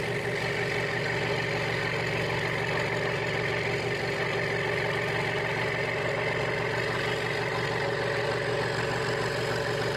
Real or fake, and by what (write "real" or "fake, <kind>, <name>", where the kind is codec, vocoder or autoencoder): real